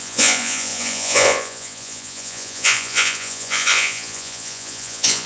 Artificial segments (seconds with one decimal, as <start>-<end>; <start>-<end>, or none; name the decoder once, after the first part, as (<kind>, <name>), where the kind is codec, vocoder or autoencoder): 0.0-5.3 (vocoder, Vocos)